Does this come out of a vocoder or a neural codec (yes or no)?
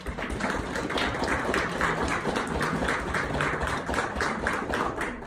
no